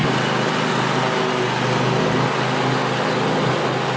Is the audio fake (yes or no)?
no